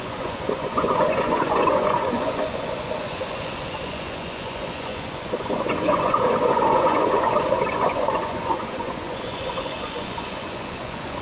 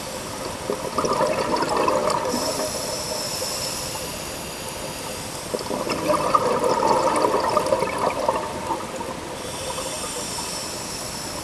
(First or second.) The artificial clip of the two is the first